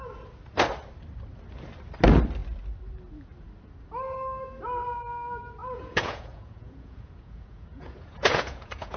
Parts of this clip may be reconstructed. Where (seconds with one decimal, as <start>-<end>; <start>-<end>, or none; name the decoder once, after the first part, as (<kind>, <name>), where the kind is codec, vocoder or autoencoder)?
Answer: 5.6-9.0 (vocoder, Vocos)